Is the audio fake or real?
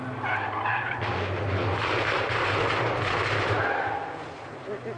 real